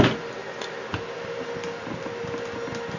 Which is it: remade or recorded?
recorded